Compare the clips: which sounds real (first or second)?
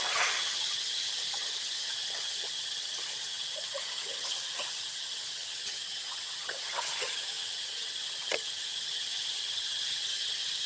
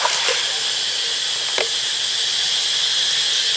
second